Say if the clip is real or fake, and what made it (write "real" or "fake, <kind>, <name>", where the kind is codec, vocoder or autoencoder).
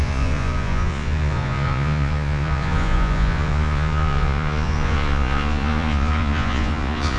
fake, vocoder, Vocos